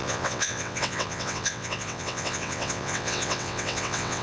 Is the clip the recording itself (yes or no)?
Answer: no